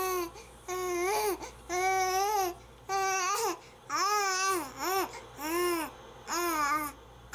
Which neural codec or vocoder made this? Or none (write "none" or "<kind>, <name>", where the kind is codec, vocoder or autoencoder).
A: none